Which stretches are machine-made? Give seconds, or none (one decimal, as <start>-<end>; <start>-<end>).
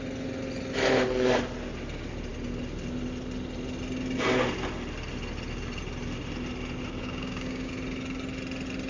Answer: 7.0-7.7